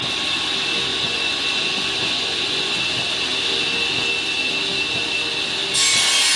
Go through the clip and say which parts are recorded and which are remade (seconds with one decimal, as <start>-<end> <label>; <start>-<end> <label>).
0.0-0.9 recorded; 0.9-2.8 remade; 2.8-6.4 recorded

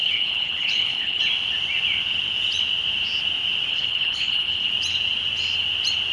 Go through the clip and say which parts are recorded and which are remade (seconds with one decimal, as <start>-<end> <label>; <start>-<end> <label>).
0.0-1.2 remade; 1.2-3.7 recorded; 3.7-4.7 remade; 4.7-6.1 recorded

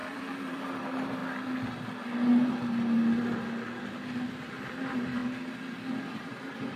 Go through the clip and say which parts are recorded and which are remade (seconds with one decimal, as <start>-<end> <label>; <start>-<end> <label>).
0.0-1.2 remade; 1.2-4.3 recorded; 4.3-5.2 remade; 5.2-6.1 recorded; 6.1-6.8 remade

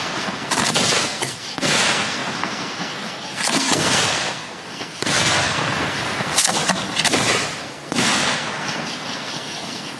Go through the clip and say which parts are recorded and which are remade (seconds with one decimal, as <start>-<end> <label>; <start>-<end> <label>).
0.0-6.6 remade; 6.6-7.6 recorded; 7.6-10.0 remade

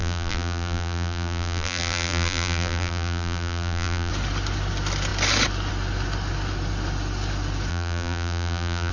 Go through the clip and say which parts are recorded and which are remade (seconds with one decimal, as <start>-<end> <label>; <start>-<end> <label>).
0.0-4.1 remade; 4.1-7.7 recorded; 7.7-8.9 remade

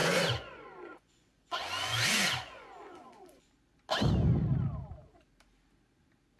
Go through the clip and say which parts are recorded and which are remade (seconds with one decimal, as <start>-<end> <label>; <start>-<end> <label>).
0.0-3.5 remade; 3.5-6.4 recorded

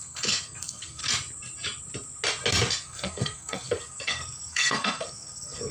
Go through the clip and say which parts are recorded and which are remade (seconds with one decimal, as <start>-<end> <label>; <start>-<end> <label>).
0.0-1.0 remade; 1.0-2.7 recorded; 2.7-5.7 remade

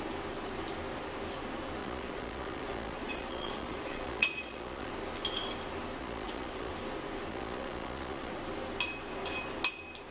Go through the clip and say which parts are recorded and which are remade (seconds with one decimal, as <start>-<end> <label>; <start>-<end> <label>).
0.0-1.8 recorded; 1.8-4.9 remade; 4.9-6.0 recorded; 6.0-6.7 remade; 6.7-7.3 recorded; 7.3-8.3 remade; 8.3-10.1 recorded